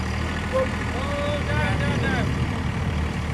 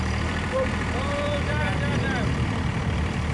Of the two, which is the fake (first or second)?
second